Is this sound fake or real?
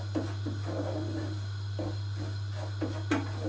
real